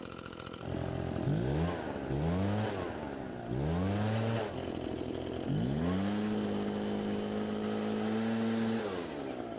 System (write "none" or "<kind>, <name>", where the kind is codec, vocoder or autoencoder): none